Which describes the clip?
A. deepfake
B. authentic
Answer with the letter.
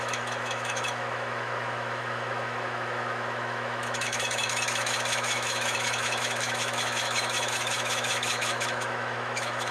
A